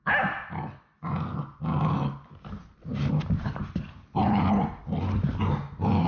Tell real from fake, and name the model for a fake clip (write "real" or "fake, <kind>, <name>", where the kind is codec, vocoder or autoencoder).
real